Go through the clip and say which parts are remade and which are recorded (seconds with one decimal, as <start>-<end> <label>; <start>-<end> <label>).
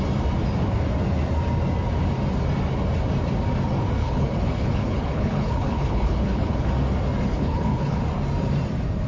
0.0-4.0 recorded; 4.0-6.7 remade; 6.7-7.3 recorded; 7.3-8.0 remade; 8.0-9.1 recorded